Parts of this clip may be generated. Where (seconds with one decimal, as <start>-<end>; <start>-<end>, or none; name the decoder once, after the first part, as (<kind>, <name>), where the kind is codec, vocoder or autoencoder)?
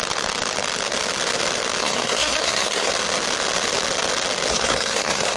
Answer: 1.8-2.9 (codec, SNAC); 4.5-5.4